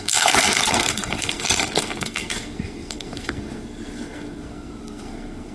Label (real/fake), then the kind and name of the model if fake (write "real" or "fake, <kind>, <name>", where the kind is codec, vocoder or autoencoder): fake, codec, SNAC